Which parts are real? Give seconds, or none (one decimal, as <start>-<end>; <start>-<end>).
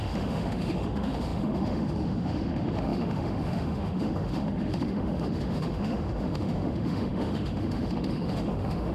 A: none